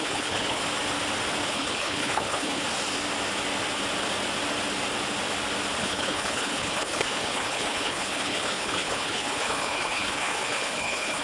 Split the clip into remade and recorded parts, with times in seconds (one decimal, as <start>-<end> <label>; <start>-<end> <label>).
0.0-0.6 remade; 0.6-1.5 recorded; 1.5-2.6 remade; 2.6-5.8 recorded; 5.8-11.2 remade